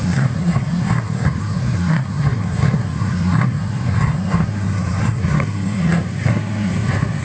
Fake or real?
fake